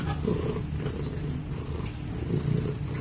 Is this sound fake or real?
real